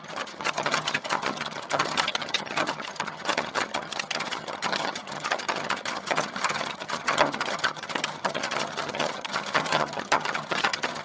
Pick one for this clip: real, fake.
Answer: fake